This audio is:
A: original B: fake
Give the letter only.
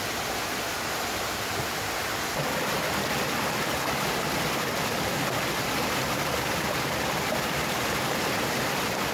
A